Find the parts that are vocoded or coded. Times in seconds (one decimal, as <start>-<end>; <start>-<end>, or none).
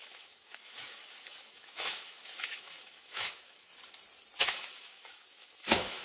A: 0.0-3.7; 4.4-6.0